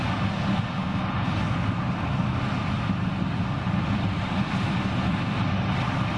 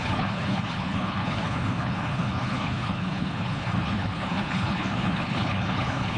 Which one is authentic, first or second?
first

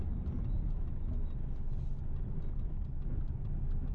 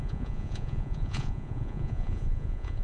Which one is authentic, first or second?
first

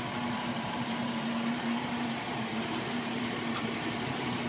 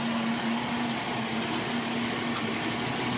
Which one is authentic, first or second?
second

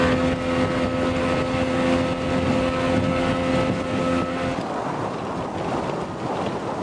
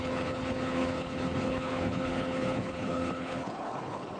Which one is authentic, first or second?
first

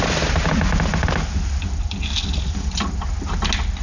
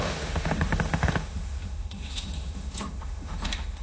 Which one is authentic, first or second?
first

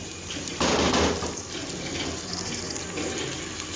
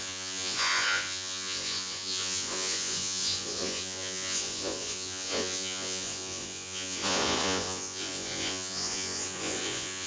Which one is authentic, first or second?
first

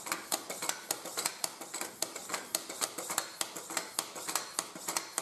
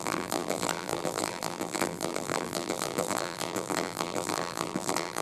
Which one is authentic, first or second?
first